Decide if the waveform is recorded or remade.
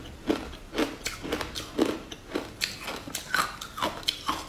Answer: recorded